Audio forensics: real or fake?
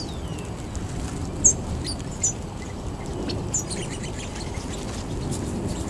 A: real